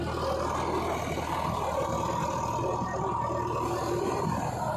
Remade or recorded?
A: recorded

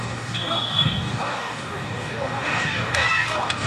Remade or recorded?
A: remade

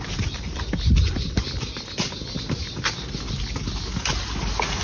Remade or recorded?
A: recorded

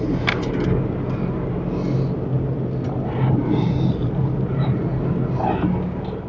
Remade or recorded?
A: recorded